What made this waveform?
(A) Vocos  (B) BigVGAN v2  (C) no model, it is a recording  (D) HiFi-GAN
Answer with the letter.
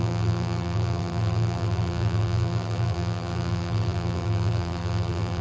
B